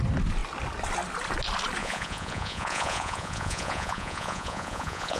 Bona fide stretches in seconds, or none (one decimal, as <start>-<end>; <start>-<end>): 0.0-1.8